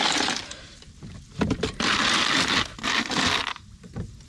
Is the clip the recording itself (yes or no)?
yes